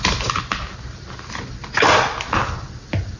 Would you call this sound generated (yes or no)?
no